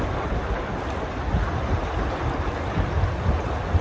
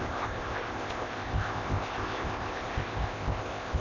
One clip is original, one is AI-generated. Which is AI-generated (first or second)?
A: second